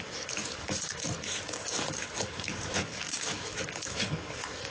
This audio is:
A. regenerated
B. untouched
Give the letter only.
A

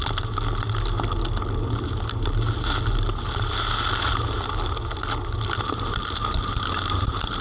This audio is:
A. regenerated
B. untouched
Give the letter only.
B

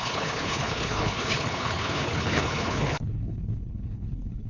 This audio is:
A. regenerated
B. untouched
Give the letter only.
A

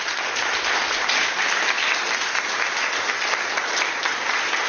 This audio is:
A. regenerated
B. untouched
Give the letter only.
B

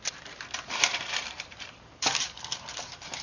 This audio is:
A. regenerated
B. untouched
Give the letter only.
A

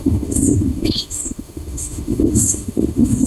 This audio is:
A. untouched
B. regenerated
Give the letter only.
B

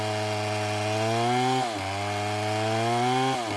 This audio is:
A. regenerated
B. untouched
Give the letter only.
B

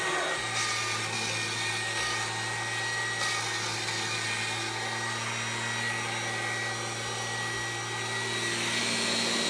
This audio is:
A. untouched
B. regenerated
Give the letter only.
A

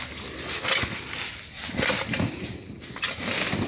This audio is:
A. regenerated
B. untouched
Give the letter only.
B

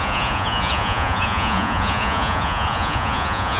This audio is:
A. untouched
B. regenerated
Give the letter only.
B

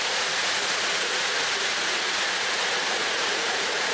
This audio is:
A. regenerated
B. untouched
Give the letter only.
A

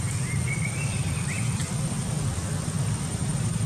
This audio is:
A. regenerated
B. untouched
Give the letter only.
B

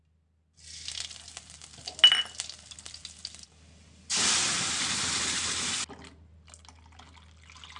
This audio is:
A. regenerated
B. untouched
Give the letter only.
B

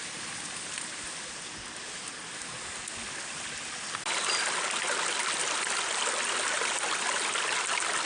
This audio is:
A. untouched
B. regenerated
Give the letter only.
A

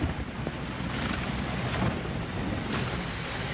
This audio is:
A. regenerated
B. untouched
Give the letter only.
B